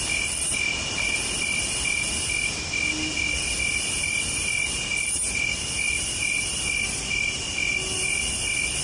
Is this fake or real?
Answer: real